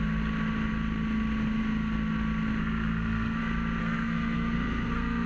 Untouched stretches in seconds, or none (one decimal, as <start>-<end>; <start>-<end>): 0.0-2.6; 3.4-3.8